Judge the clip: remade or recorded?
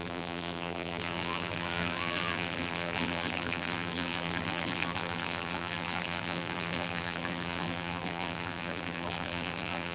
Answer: remade